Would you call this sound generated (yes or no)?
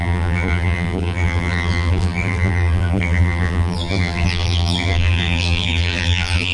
yes